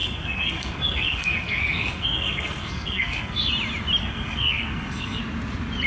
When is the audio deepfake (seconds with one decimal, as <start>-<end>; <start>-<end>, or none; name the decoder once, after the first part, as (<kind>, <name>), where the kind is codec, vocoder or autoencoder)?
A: 0.0-3.5 (codec, SNAC); 4.0-5.2